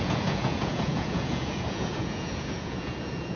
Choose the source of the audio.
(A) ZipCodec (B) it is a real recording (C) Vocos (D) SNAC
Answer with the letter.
C